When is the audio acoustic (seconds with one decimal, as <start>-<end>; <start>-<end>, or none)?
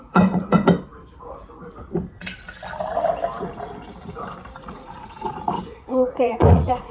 0.5-4.6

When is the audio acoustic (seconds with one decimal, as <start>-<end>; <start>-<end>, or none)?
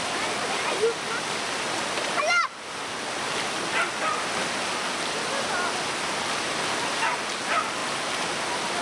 0.0-8.8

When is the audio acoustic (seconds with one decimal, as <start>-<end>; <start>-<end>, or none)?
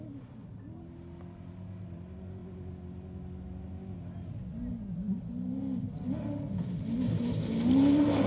0.0-8.3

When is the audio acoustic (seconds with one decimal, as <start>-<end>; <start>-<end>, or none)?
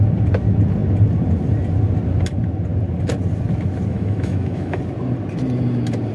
0.0-3.9; 4.8-6.1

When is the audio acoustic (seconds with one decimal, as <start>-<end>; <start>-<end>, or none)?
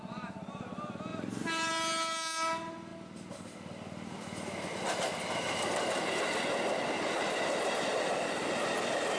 0.0-1.1; 1.7-9.2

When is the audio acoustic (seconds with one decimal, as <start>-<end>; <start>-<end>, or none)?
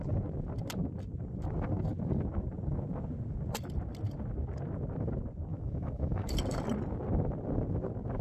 0.0-5.5; 6.3-8.2